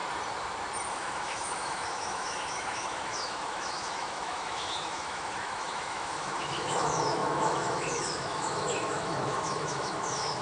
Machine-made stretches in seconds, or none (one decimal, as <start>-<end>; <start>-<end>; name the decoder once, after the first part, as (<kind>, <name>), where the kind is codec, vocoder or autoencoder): 0.9-10.4 (autoencoder, DAC-VAE)